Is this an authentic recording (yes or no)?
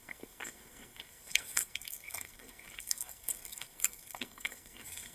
no